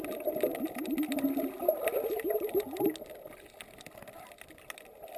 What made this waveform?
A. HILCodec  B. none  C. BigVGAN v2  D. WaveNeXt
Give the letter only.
B